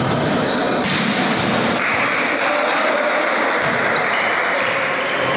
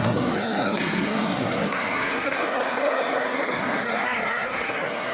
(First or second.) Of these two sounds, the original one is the first